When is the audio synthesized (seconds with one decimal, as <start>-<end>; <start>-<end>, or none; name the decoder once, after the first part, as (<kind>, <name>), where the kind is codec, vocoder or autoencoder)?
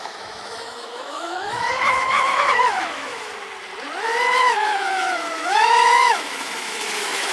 0.0-3.3 (autoencoder, DAC-VAE); 4.4-7.3